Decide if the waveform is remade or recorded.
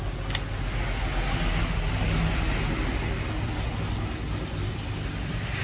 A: recorded